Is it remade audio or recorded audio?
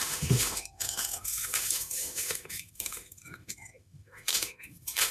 remade